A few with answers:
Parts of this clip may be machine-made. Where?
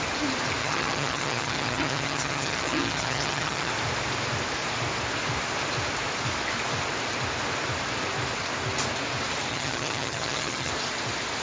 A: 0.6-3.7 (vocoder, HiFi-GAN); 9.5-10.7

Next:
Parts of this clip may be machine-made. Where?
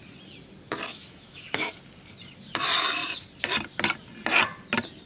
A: 0.9-1.8 (autoencoder, DAC-VAE)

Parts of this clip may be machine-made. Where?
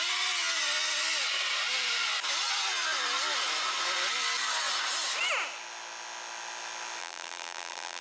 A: 7.0-8.0 (vocoder, BigVGAN v2)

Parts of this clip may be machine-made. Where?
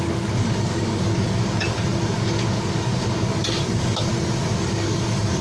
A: 0.0-4.1 (codec, DAC); 4.6-5.4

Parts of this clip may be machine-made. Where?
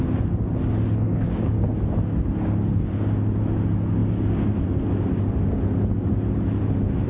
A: 1.1-1.7 (codec, DAC)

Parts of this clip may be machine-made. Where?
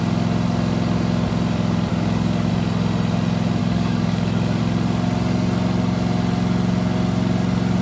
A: 1.9-2.5 (codec, DAC); 3.6-4.6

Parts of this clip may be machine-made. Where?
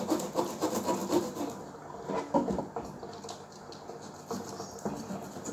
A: none